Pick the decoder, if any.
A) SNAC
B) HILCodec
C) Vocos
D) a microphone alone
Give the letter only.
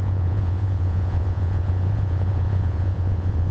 C